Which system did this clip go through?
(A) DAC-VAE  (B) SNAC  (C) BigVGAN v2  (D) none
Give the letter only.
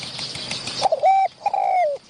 D